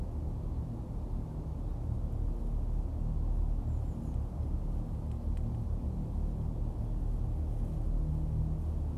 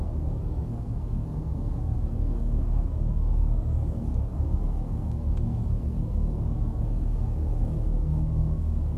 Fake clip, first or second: second